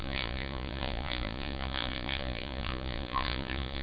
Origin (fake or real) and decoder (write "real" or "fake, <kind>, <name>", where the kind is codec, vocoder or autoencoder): fake, vocoder, Vocos